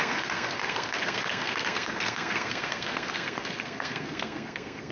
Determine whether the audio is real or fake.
fake